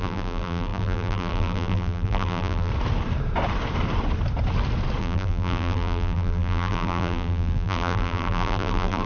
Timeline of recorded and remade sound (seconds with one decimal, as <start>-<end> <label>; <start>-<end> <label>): 0.0-2.7 remade; 2.7-5.0 recorded; 5.0-9.1 remade